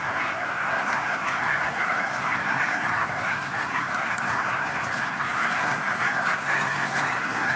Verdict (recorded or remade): remade